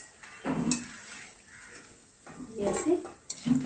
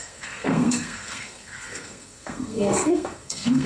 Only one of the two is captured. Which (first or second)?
first